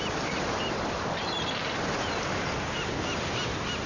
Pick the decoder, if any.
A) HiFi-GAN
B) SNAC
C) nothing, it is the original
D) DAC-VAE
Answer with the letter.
C